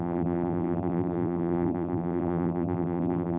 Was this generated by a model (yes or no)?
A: yes